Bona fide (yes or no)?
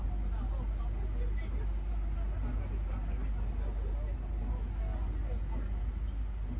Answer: yes